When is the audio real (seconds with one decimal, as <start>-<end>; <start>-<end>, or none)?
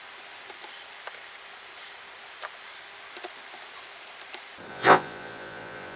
0.0-4.7